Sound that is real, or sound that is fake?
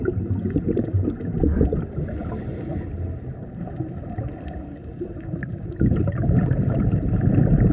real